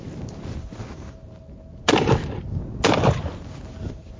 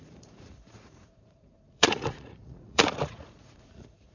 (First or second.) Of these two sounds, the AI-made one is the second